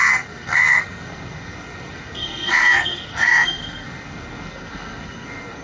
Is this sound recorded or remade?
remade